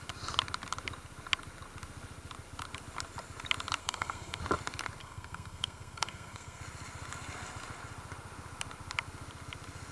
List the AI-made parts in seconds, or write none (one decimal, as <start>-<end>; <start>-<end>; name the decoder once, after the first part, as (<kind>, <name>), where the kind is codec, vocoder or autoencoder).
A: 3.8-4.4 (codec, SNAC); 5.0-6.6